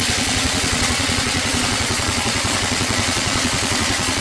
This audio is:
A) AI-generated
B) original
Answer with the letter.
A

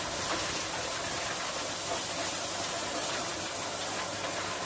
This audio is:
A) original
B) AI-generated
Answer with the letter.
A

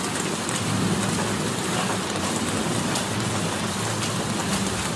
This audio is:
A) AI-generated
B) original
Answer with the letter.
B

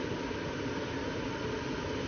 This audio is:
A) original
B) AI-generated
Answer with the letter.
A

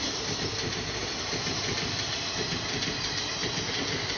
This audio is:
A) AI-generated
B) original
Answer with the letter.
B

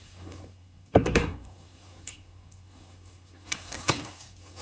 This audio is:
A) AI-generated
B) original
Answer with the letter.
A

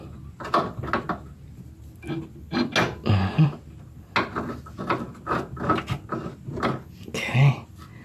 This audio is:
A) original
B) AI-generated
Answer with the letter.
A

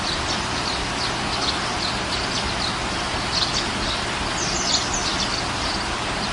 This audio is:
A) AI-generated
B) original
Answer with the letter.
B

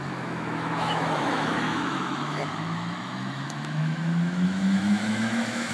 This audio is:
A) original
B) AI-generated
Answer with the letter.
B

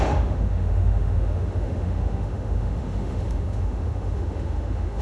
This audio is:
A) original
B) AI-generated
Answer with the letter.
B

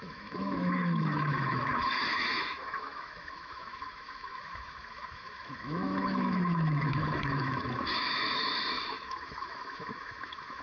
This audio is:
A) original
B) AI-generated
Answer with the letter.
B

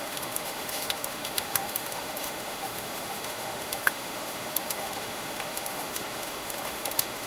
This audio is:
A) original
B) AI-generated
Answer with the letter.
B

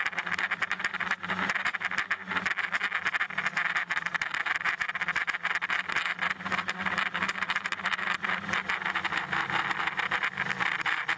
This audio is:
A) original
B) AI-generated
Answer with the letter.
A